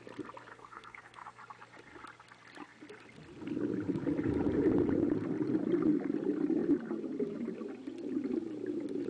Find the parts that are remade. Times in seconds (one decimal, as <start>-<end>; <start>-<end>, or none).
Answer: 0.5-1.4